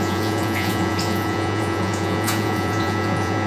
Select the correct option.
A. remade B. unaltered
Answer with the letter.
A